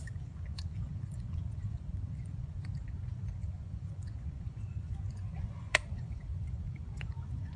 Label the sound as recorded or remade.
remade